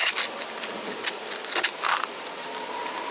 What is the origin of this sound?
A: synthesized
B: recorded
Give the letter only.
B